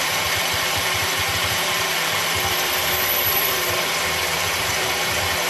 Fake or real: fake